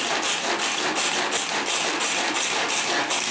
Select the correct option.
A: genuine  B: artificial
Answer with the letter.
A